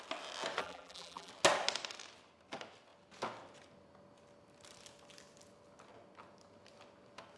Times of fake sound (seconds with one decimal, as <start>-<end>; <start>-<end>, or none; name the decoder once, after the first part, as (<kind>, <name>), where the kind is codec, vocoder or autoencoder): 0.6-1.3 (vocoder, BigVGAN v2)